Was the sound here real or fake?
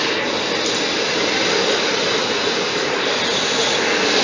real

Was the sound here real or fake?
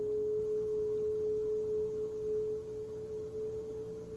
real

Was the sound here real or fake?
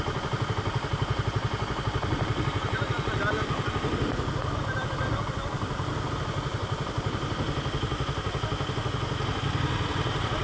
real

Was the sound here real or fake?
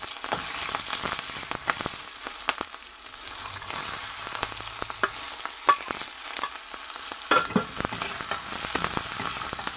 real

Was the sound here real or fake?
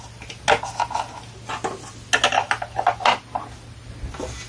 real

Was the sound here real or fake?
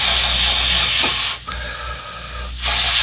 real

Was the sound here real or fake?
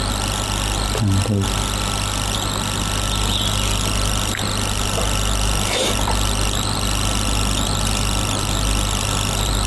real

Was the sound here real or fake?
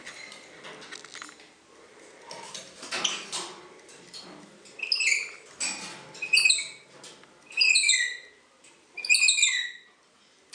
real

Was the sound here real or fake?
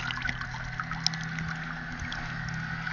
real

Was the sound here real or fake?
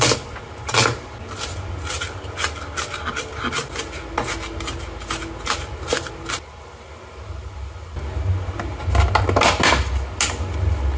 real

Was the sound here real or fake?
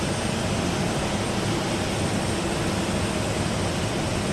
real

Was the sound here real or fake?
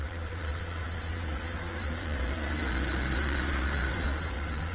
fake